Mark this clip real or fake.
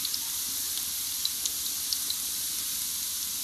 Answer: real